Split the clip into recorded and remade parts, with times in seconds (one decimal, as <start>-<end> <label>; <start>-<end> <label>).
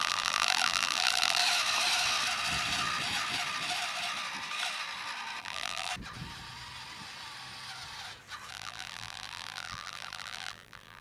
0.0-1.4 remade; 1.4-5.4 recorded; 5.4-5.9 remade; 5.9-8.5 recorded; 8.5-11.0 remade